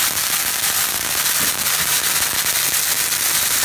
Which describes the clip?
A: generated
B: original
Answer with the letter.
B